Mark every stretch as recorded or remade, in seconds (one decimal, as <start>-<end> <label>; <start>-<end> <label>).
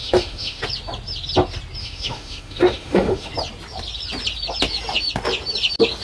0.0-0.6 remade; 0.6-1.8 recorded; 1.8-3.3 remade; 3.3-6.0 recorded